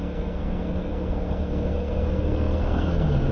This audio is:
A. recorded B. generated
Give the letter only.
B